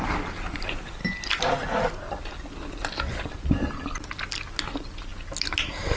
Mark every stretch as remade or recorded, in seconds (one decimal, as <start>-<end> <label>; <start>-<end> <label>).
0.0-6.0 recorded